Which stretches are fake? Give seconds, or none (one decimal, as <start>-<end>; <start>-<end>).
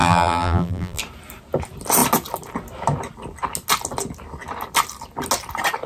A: 0.0-1.0